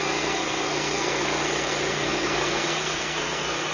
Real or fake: fake